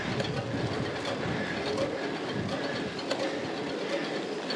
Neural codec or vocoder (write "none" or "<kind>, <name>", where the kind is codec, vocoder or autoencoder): none